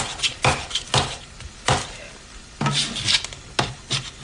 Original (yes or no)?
yes